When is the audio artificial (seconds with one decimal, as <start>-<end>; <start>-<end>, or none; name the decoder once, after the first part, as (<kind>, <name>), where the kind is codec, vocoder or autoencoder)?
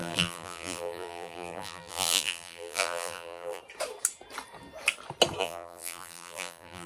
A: 0.0-3.6 (vocoder, BigVGAN v2); 5.4-6.9